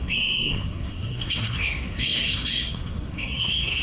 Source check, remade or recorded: remade